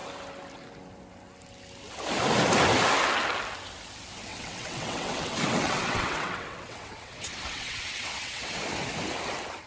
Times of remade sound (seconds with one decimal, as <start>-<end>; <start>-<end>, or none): 4.3-8.6